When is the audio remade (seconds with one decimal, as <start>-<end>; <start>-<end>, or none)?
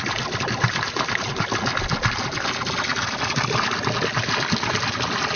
none